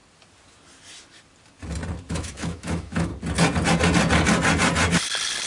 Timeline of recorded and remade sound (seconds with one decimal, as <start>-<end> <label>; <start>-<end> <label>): 0.0-2.1 recorded; 2.1-3.1 remade; 3.1-5.5 recorded